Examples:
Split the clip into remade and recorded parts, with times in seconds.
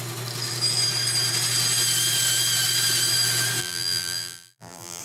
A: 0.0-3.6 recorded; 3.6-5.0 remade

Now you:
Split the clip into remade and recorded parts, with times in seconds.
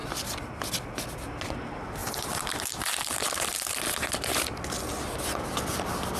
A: 0.0-0.6 remade; 0.6-2.0 recorded; 2.0-3.7 remade; 3.7-6.2 recorded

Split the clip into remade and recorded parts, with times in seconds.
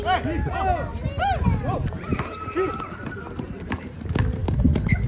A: 0.0-0.9 recorded; 0.9-4.0 remade; 4.0-4.4 recorded; 4.4-5.1 remade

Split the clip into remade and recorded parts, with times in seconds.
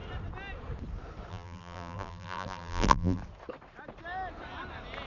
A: 0.0-1.3 recorded; 1.3-3.2 remade; 3.2-5.1 recorded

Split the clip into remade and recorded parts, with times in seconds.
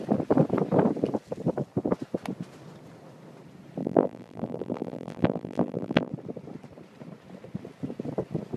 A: 0.0-3.8 recorded; 3.8-6.1 remade; 6.1-8.6 recorded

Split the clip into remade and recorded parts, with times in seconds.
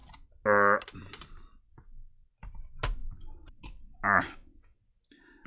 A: 0.0-5.5 recorded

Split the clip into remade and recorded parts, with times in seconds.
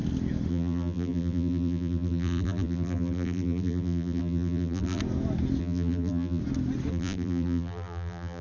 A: 0.0-0.5 recorded; 0.5-5.0 remade; 5.0-5.6 recorded; 5.6-6.4 remade; 6.4-6.9 recorded; 6.9-8.4 remade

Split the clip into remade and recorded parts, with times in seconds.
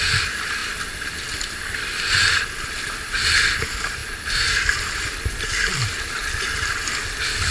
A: 0.0-7.5 remade